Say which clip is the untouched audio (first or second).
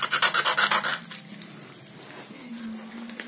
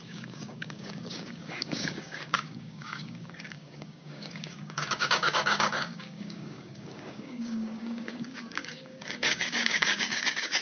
first